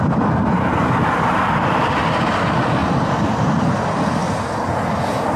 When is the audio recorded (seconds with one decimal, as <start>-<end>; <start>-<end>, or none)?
0.0-5.4